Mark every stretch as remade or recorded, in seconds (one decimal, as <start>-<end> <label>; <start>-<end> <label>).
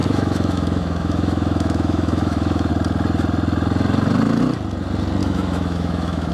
0.0-2.7 remade; 2.7-5.2 recorded; 5.2-6.3 remade